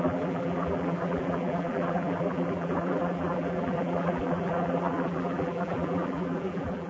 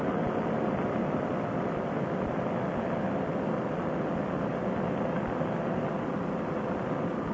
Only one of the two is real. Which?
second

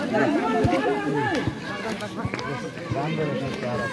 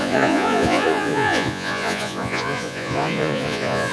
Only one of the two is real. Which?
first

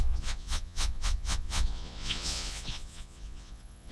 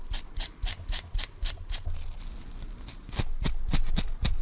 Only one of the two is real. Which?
second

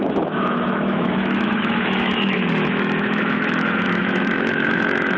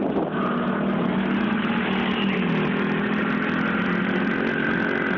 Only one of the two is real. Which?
second